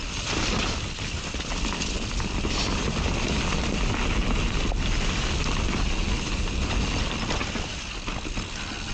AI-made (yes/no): no